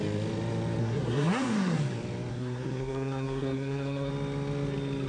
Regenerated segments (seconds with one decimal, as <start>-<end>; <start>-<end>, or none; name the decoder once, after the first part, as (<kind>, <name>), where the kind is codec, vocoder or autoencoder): 0.8-1.8 (codec, SNAC); 2.3-4.1